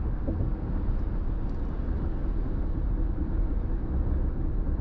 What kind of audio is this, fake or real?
real